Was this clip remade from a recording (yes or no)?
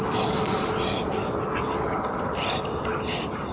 no